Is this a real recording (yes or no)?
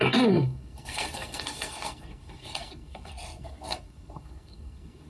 no